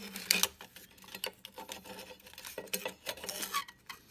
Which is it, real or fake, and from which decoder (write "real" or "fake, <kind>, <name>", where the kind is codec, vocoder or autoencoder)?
real